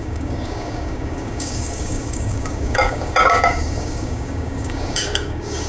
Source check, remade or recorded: remade